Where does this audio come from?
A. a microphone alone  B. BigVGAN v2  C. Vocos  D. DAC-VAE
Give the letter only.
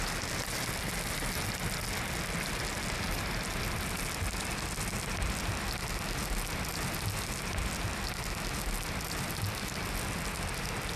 A